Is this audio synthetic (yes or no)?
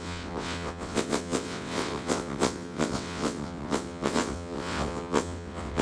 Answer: yes